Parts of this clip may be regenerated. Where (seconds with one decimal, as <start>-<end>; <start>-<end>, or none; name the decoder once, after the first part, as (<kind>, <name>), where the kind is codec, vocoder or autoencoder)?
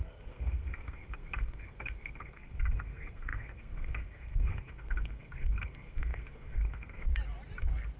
0.0-7.1 (codec, SNAC)